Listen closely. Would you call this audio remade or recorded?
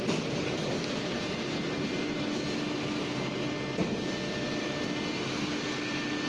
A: recorded